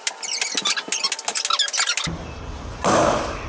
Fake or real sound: real